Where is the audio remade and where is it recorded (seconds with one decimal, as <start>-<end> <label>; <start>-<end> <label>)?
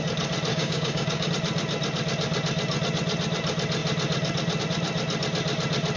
0.0-0.5 recorded; 0.5-1.3 remade; 1.3-6.0 recorded